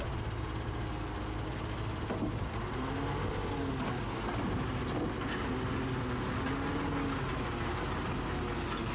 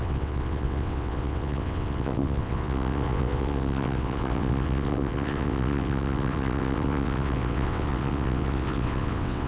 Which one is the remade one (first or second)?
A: second